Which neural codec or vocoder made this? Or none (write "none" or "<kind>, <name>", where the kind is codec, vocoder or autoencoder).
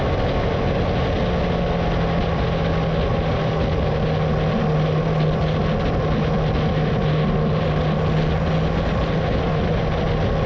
none